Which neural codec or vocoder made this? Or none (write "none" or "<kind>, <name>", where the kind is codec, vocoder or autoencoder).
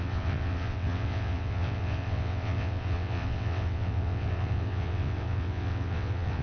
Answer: vocoder, WaveNeXt